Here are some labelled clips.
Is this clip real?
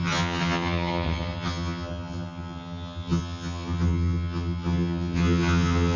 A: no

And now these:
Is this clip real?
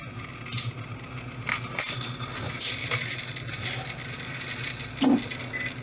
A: yes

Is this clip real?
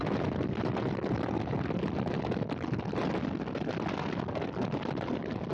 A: yes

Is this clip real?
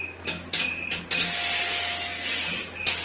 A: yes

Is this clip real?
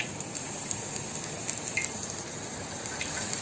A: yes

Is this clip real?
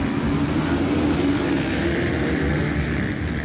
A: yes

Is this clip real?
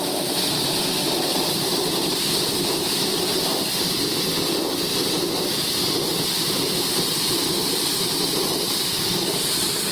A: yes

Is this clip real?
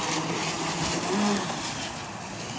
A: yes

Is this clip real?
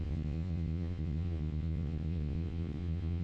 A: no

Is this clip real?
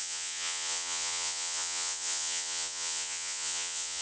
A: no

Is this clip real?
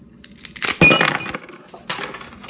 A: yes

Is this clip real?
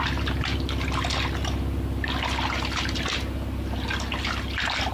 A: yes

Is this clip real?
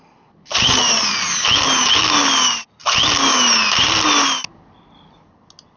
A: yes